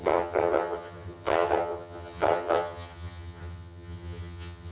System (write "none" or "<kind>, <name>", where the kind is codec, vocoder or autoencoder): vocoder, HiFi-GAN